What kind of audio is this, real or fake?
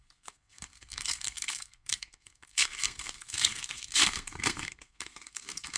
fake